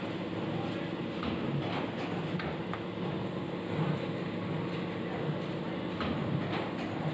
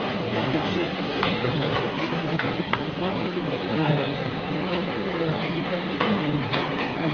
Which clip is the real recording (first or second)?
first